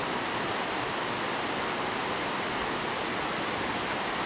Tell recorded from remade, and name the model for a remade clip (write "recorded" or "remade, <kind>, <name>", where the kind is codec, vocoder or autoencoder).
recorded